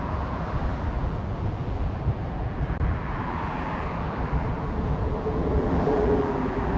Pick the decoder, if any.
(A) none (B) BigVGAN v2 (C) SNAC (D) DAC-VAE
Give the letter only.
B